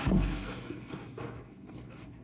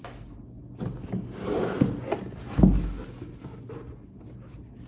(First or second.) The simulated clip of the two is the first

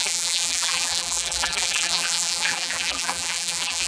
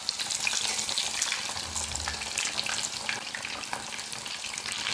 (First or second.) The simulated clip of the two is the first